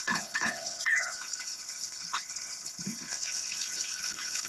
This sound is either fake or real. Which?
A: fake